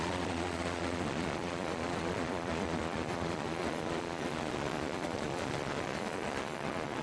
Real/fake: fake